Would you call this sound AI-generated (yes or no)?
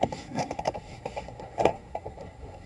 yes